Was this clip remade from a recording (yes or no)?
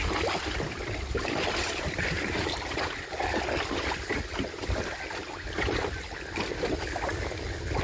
no